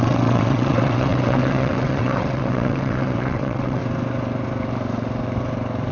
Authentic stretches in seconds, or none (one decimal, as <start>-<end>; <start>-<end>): 3.8-5.9

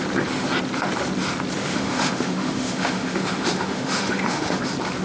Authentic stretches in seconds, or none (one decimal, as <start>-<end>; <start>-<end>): 0.0-1.6; 4.6-5.0

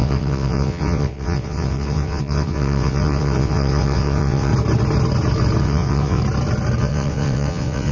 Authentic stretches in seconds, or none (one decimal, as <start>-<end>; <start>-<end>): 4.5-5.6; 6.2-6.8

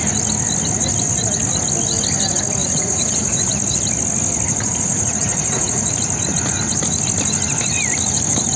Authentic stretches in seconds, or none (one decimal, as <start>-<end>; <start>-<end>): 0.0-2.6; 3.5-4.5; 5.9-8.6

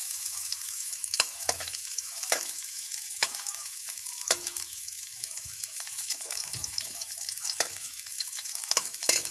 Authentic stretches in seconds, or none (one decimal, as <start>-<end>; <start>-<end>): none

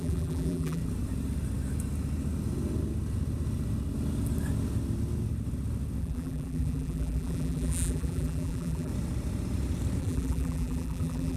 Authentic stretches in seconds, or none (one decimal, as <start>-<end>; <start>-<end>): 0.8-6.0; 8.9-10.0

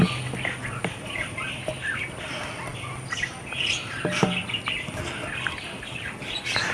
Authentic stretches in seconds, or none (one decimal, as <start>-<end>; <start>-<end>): 0.0-6.7

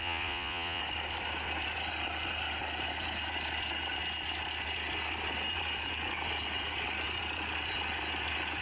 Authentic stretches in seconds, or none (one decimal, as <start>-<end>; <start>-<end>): 0.8-8.6